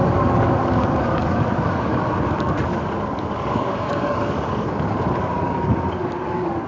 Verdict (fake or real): fake